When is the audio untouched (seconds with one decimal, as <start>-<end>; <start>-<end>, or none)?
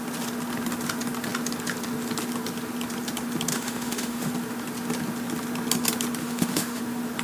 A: 0.0-3.5; 4.3-6.2; 6.8-7.2